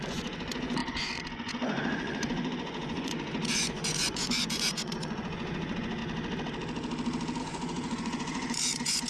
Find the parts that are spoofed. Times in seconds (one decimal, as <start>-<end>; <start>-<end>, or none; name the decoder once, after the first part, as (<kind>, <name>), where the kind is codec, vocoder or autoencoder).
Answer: 0.0-6.0 (vocoder, Vocos); 7.4-9.1